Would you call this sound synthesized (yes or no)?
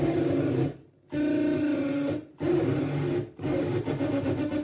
no